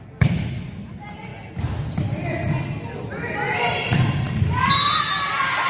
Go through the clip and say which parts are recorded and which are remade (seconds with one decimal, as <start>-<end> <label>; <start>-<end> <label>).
0.0-1.3 remade; 1.3-4.7 recorded; 4.7-5.7 remade